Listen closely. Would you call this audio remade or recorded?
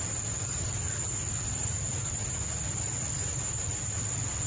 recorded